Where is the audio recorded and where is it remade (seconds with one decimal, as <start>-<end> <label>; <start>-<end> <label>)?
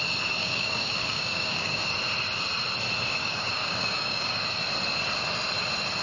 0.0-0.4 recorded; 0.4-1.7 remade; 1.7-3.1 recorded; 3.1-4.4 remade; 4.4-6.0 recorded